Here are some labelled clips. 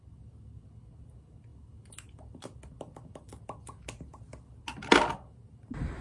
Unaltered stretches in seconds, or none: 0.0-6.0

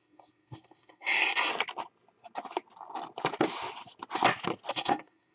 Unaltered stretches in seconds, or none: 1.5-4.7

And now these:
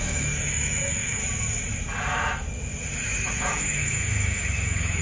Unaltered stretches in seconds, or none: 1.2-3.3